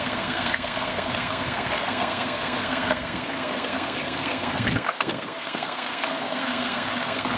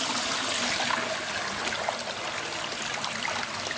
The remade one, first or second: first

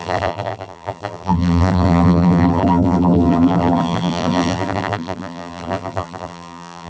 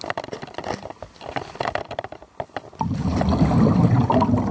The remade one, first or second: first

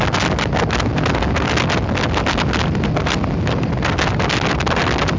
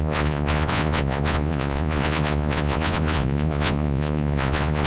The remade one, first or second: second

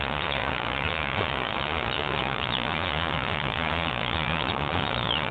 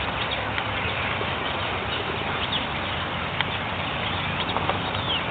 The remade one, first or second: first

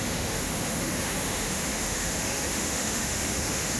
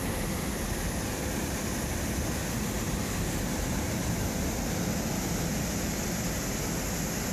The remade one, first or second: first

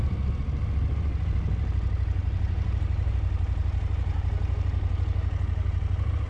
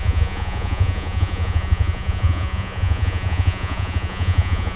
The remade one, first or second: second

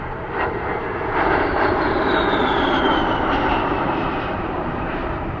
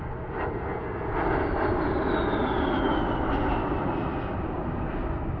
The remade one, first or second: first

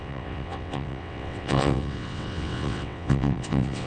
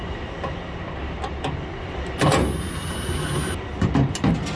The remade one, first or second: first